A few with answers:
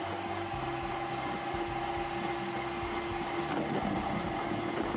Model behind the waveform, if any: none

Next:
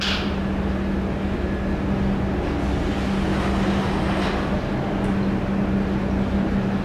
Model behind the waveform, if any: none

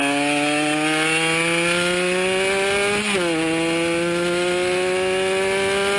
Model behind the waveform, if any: none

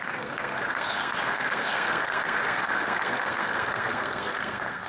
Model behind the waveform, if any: codec, SNAC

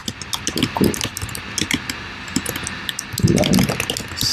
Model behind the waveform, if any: none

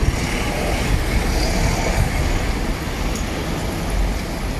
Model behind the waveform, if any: none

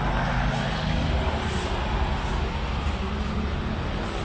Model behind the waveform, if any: none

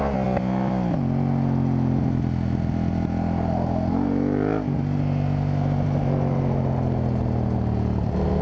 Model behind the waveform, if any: none